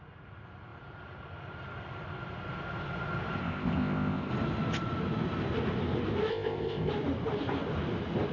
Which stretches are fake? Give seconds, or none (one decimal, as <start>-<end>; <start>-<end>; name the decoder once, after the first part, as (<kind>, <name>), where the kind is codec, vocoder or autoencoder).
3.4-4.3 (codec, ZipCodec); 6.3-6.9